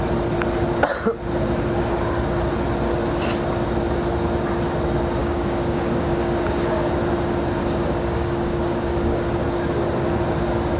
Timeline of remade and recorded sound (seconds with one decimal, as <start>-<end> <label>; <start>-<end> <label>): 0.0-5.2 recorded; 5.2-6.9 remade; 6.9-7.6 recorded; 7.6-9.4 remade; 9.4-10.8 recorded